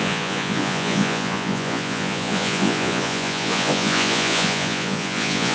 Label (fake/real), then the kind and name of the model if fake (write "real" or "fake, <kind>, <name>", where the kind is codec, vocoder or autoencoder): fake, vocoder, Vocos